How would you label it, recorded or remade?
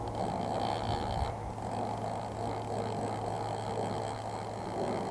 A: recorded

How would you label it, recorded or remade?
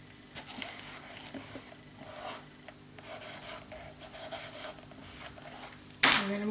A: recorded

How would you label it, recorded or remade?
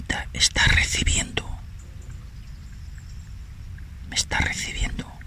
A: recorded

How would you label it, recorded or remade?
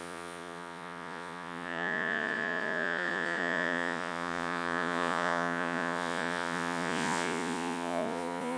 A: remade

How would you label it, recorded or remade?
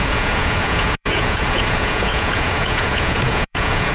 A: remade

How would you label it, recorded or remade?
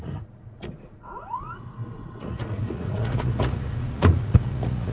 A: remade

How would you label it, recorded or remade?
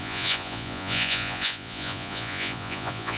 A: remade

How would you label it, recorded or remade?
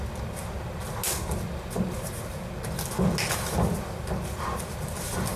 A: recorded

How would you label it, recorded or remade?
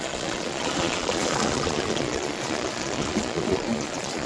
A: remade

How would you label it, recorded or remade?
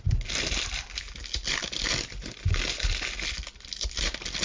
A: recorded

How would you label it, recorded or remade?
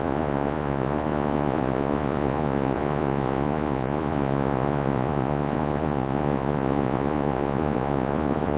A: remade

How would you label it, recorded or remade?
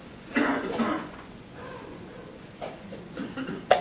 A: remade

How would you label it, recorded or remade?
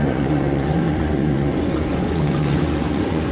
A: remade